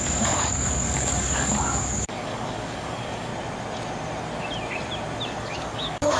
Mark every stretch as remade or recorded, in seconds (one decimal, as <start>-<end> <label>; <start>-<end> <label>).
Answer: 0.0-3.3 remade; 3.3-5.4 recorded; 5.4-6.2 remade